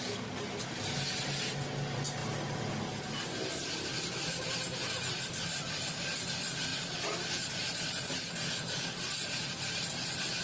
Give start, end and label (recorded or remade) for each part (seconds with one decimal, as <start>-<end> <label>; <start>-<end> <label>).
0.0-10.4 recorded